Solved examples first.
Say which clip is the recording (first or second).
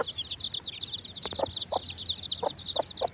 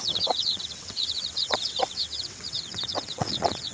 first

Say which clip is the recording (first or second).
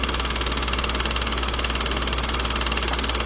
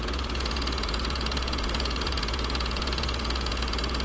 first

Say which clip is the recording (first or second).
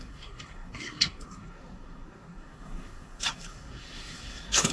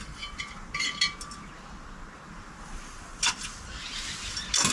second